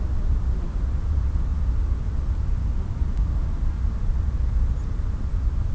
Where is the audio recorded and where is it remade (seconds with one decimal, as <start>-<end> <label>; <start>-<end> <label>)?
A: 0.0-1.5 remade; 1.5-4.9 recorded; 4.9-5.7 remade